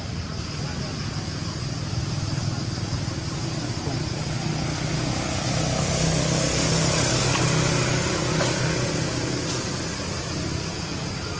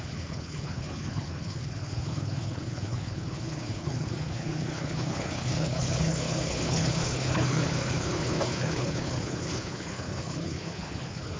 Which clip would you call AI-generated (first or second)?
second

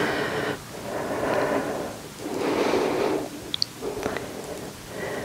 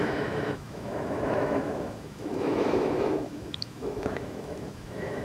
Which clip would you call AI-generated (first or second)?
second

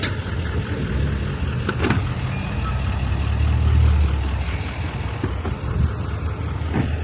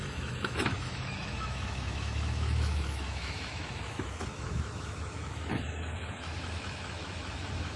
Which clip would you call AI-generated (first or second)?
second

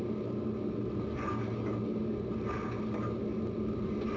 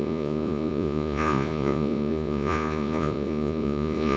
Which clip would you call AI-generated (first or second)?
second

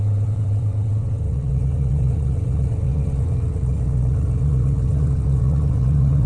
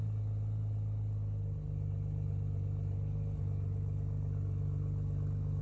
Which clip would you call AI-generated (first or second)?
first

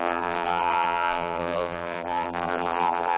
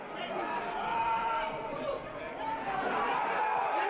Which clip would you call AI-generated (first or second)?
first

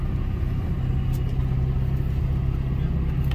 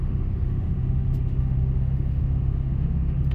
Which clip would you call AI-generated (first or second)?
second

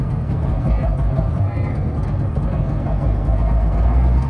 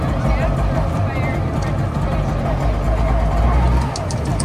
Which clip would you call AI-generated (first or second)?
first